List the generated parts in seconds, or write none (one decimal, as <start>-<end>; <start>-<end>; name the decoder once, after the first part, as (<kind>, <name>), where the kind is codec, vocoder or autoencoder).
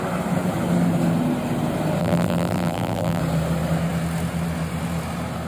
2.0-3.2 (vocoder, BigVGAN v2)